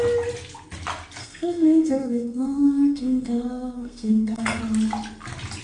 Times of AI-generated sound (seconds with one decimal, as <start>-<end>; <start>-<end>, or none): 1.2-4.6